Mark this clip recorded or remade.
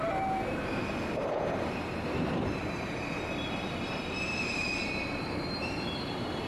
remade